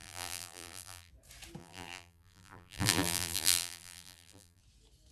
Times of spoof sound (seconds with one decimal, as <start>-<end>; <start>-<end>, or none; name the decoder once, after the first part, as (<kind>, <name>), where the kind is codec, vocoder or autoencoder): 0.0-1.1 (vocoder, BigVGAN v2); 1.6-4.6